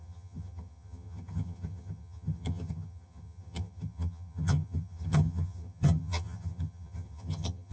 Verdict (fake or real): fake